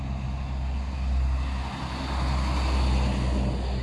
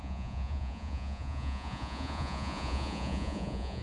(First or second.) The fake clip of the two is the second